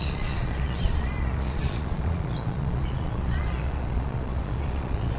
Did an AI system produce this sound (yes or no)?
yes